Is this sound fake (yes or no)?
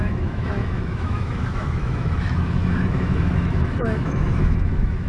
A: yes